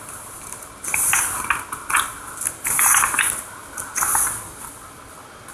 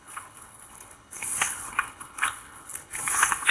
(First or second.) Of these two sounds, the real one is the first